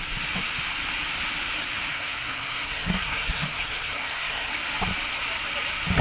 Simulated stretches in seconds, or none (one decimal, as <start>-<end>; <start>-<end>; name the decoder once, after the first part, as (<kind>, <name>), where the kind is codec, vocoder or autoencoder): 1.9-4.5 (codec, SNAC)

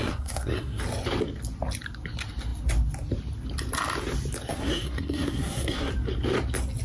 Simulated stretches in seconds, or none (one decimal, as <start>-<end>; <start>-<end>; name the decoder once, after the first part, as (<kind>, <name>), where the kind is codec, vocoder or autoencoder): 0.0-0.8 (codec, SNAC); 4.5-5.9

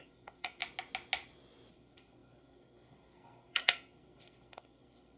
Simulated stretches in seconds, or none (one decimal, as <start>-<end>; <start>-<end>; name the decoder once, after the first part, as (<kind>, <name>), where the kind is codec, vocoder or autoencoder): 0.0-0.6 (codec, SNAC); 1.7-5.2

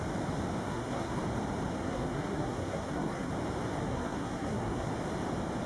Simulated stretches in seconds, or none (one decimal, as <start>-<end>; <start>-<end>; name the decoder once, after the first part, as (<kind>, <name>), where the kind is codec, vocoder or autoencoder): 0.6-1.2 (codec, SNAC); 1.8-3.3; 3.8-4.9

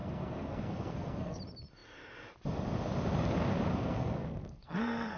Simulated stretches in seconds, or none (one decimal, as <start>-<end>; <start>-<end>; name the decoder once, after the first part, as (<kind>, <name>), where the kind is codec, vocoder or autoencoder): 0.0-1.4 (codec, SNAC); 3.7-5.2

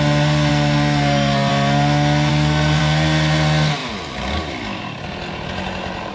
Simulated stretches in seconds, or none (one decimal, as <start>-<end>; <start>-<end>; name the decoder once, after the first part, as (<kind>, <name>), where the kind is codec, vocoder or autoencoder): 0.5-1.5 (codec, SNAC); 2.3-2.8

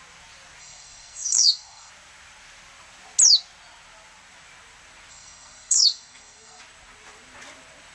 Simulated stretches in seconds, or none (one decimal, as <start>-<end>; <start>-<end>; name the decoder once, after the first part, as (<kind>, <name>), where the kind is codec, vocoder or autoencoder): 0.6-1.9 (codec, SNAC); 5.1-6.6